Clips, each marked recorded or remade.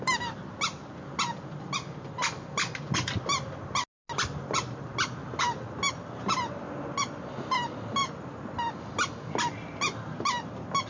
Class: recorded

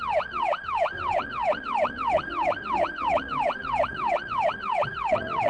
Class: remade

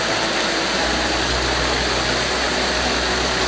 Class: recorded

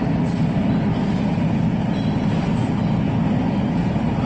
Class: recorded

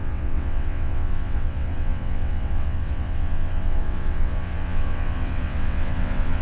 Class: remade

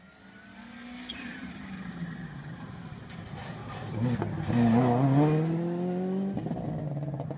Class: recorded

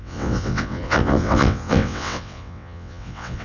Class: remade